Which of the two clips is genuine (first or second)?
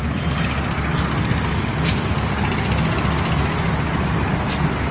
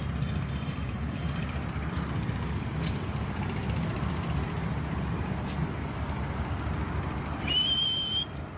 first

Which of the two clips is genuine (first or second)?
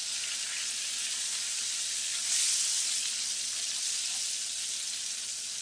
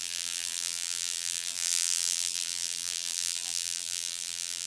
first